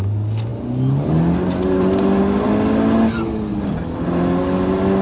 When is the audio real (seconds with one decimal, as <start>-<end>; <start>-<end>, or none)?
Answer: 0.0-5.0